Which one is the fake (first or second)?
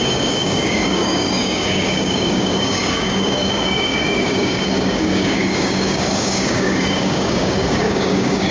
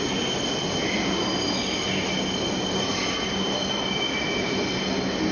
first